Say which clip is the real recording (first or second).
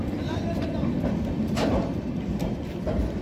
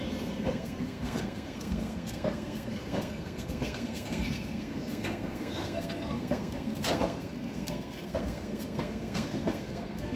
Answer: first